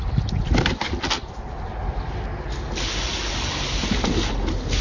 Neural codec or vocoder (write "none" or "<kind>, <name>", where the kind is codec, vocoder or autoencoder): none